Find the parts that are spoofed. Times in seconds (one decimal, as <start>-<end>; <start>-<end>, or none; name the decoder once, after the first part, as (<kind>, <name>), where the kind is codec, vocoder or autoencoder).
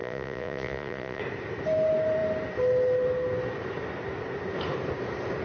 0.0-1.2 (vocoder, Vocos)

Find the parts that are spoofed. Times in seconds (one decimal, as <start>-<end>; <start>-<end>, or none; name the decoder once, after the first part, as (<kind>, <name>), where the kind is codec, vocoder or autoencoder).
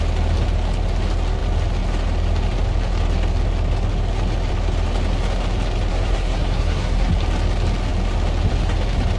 5.9-7.1 (codec, SNAC)